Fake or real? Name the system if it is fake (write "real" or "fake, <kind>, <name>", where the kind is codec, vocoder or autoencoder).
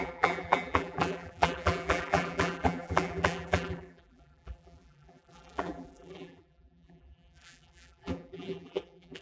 fake, vocoder, BigVGAN v2